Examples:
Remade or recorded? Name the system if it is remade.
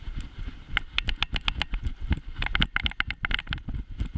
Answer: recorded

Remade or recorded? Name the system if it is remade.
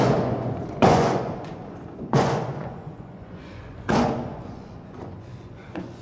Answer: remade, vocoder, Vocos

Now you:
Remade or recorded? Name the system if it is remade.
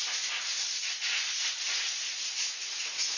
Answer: remade, vocoder, Vocos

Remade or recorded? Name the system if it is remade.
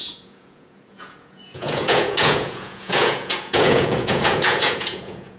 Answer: remade, vocoder, Vocos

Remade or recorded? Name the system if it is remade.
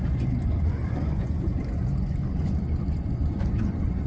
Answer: remade, vocoder, Vocos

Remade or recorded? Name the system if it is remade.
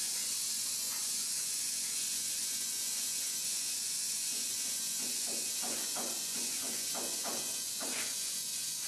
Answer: remade, vocoder, Vocos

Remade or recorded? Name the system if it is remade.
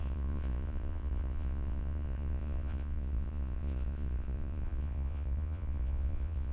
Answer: remade, vocoder, Vocos